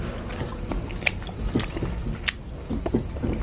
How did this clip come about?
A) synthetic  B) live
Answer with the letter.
B